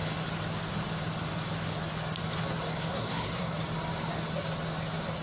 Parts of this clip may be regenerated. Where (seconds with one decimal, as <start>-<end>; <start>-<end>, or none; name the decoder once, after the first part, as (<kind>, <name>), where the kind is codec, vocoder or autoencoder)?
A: 2.8-3.5 (codec, SNAC)